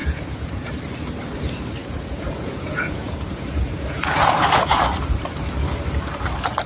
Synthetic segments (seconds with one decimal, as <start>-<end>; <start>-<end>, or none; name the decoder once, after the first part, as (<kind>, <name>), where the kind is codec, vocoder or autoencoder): 0.0-0.7 (vocoder, Vocos); 1.8-4.8